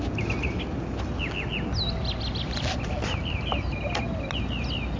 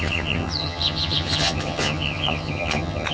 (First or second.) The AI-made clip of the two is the second